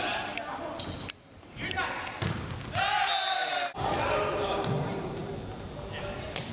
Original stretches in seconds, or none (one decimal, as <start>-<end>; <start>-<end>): 0.0-6.5